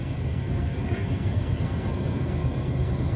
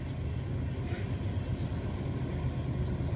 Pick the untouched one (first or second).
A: second